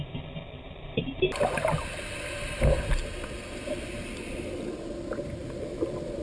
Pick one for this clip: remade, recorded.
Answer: recorded